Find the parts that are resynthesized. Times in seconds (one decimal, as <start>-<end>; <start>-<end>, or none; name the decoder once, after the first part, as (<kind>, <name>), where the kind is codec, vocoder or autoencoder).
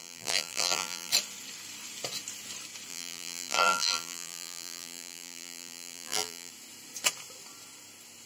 0.0-1.1 (vocoder, BigVGAN v2); 2.9-6.5